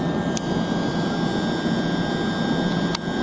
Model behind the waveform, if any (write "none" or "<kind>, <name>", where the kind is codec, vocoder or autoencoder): none